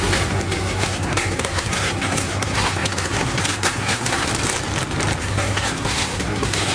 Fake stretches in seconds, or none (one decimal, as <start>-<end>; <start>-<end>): 0.0-4.3; 5.2-6.7